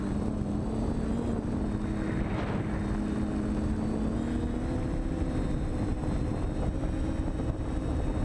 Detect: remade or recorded recorded